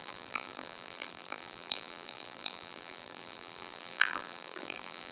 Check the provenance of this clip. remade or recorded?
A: remade